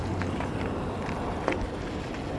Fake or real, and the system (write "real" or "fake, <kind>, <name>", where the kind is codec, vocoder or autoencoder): real